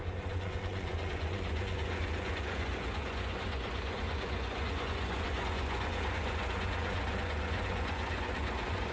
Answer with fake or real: fake